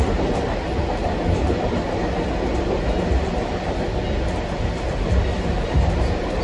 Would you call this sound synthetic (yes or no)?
no